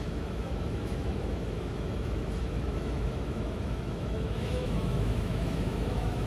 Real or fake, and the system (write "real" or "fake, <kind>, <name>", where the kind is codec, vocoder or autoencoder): fake, autoencoder, DAC-VAE